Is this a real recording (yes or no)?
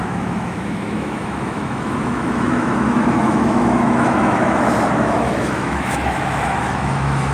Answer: no